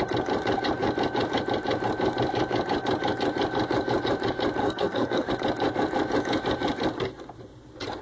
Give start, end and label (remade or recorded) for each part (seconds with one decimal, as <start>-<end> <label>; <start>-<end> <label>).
0.0-4.6 recorded; 4.6-5.3 remade; 5.3-8.0 recorded